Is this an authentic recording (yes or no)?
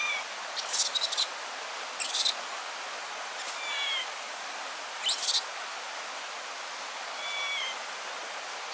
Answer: yes